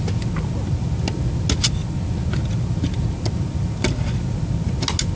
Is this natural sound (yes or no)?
yes